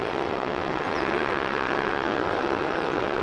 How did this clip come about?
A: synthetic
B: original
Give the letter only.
A